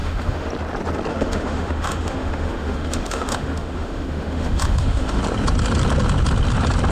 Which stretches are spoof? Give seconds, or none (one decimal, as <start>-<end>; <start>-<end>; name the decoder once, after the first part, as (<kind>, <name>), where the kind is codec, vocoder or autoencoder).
0.0-0.5 (autoencoder, DAC-VAE); 1.1-5.2